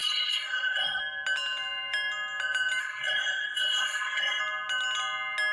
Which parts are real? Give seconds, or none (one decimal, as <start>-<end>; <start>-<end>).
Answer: 1.0-2.8; 4.4-5.5